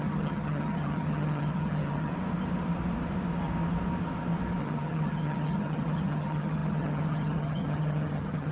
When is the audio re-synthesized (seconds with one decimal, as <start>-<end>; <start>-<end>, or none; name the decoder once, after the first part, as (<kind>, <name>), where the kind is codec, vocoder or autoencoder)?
0.0-2.1 (vocoder, HiFi-GAN); 4.6-8.5